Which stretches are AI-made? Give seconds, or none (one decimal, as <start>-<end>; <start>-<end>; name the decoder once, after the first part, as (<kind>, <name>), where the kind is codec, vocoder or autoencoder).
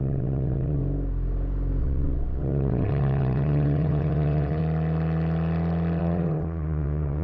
0.0-0.8 (vocoder, WaveNeXt); 1.8-4.6; 6.0-7.2